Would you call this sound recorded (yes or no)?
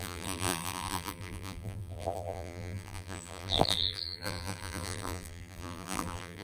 no